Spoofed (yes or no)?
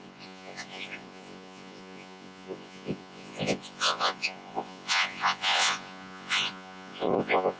yes